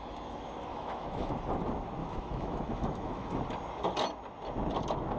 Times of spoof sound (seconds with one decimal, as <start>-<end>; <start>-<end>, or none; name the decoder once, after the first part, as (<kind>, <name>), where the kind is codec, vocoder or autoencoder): 0.7-1.3 (autoencoder, DAC-VAE); 2.0-3.4